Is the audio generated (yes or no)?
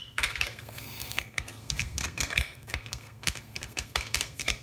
yes